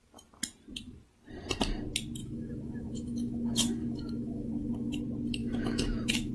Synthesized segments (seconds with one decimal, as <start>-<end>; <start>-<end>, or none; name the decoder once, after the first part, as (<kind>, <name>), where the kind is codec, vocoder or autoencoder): 2.2-5.0 (autoencoder, DAC-VAE); 5.4-6.3